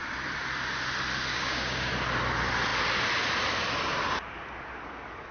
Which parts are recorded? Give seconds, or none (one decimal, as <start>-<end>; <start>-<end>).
0.0-1.3; 1.9-5.3